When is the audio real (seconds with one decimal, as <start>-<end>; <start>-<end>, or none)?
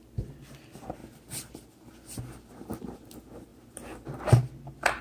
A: 0.0-5.0